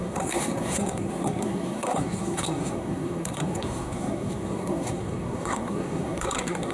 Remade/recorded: remade